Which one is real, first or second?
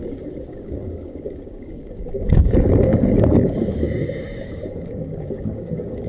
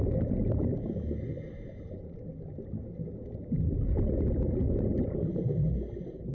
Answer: second